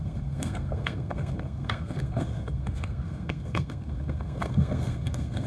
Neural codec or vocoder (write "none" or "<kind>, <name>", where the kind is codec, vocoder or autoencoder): codec, SNAC